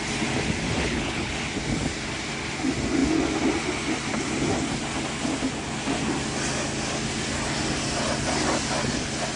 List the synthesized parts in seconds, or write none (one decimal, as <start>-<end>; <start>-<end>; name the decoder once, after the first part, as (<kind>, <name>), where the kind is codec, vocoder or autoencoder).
0.8-1.3 (codec, HILCodec)